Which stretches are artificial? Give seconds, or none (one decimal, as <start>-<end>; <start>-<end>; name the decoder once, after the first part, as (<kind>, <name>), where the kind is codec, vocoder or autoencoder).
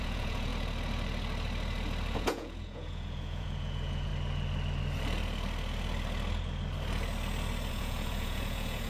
0.0-0.5 (vocoder, Vocos); 2.1-4.1; 7.7-8.9